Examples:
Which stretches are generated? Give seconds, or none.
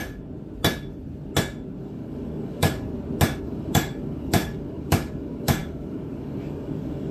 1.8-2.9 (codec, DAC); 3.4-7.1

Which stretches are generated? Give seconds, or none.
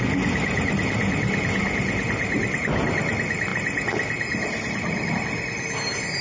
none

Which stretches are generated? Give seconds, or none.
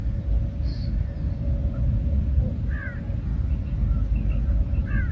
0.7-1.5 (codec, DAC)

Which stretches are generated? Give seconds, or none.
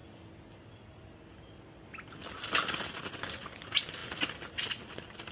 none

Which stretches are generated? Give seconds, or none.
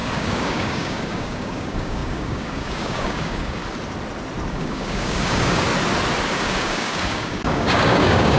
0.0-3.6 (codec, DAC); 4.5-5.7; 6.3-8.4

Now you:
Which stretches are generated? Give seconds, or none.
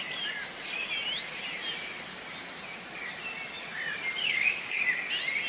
4.2-4.8 (codec, DAC)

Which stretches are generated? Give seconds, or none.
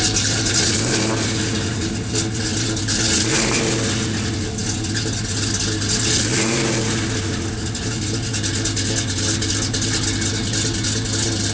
none